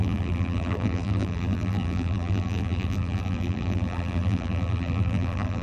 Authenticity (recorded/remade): remade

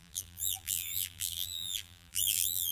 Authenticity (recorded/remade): remade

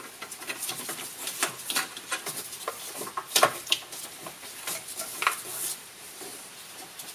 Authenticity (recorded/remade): remade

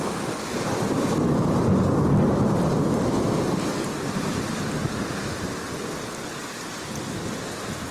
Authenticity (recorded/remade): remade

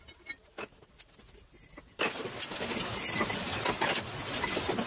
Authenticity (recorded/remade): recorded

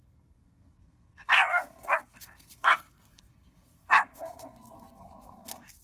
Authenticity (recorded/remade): remade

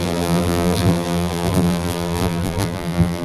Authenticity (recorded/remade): remade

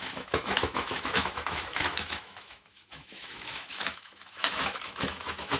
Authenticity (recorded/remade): remade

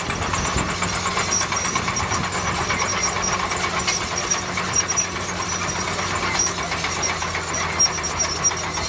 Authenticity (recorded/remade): recorded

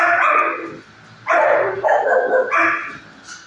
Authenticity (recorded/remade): recorded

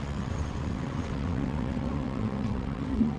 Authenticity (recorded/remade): remade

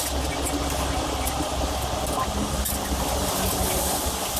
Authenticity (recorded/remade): recorded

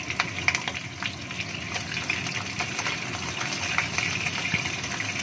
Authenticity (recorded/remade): recorded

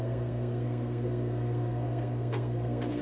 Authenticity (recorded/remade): remade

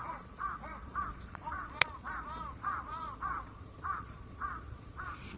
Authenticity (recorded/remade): remade